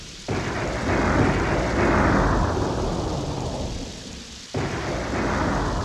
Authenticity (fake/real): real